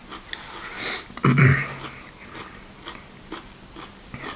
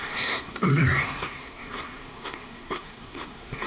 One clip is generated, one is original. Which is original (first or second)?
first